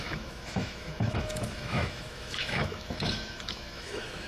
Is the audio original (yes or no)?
no